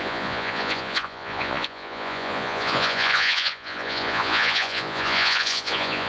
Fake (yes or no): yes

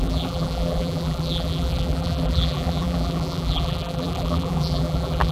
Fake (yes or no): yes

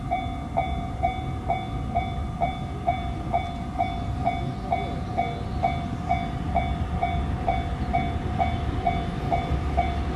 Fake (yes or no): no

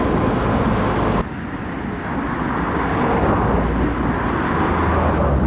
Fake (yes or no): no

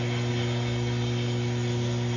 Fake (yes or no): no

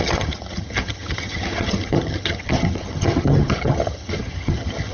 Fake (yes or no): yes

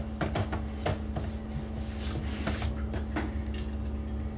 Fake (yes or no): no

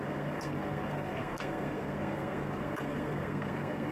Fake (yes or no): yes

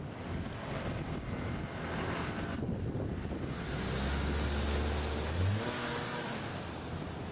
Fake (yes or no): no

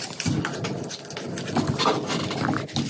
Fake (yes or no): no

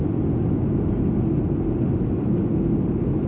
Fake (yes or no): no